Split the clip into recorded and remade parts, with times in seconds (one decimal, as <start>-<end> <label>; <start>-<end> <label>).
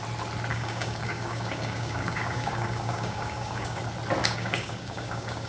0.0-0.5 recorded; 0.5-3.8 remade; 3.8-4.2 recorded; 4.2-5.5 remade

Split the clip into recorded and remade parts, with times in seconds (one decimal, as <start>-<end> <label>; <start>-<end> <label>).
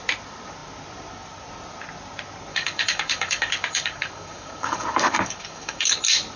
0.0-2.5 recorded; 2.5-5.9 remade; 5.9-6.4 recorded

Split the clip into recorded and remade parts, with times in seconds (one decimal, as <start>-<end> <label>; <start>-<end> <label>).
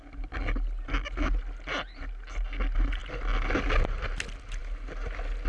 0.0-5.5 recorded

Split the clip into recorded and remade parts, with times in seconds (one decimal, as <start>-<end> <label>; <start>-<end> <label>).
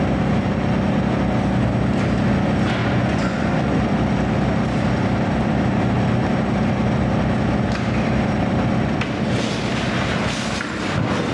0.0-2.8 recorded; 2.8-3.8 remade; 3.8-11.3 recorded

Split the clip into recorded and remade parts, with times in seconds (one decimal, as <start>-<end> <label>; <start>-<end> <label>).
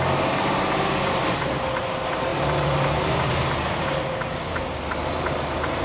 0.0-5.8 recorded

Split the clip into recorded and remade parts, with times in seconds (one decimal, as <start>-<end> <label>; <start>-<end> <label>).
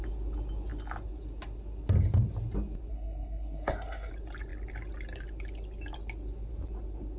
0.0-2.9 recorded; 2.9-4.1 remade; 4.1-7.2 recorded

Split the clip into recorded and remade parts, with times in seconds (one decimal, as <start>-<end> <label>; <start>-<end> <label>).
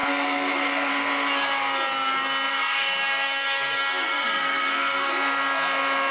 0.0-0.9 remade; 0.9-2.5 recorded; 2.5-5.1 remade; 5.1-6.1 recorded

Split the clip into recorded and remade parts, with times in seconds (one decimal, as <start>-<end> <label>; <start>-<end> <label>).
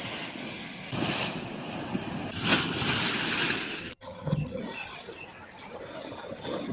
0.0-3.8 recorded; 3.8-4.6 remade; 4.6-6.7 recorded